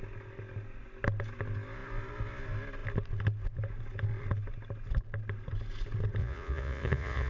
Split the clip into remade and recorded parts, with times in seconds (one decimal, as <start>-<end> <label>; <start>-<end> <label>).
0.0-6.2 recorded; 6.2-7.3 remade